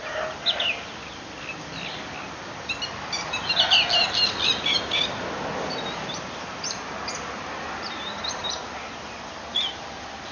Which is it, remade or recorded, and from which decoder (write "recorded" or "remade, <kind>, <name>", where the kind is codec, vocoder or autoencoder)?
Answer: recorded